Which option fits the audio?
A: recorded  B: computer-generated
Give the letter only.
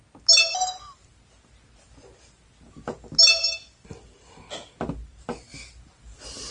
A